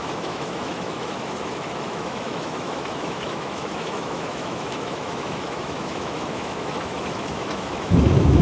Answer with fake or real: fake